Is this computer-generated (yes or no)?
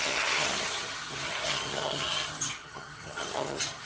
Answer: yes